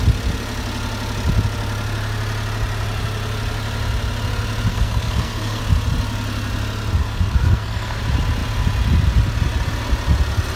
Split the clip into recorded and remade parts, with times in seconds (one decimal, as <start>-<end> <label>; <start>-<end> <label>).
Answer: 0.0-4.7 recorded; 4.7-5.6 remade; 5.6-7.0 recorded; 7.0-8.0 remade; 8.0-10.6 recorded